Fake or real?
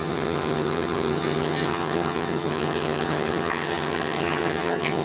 fake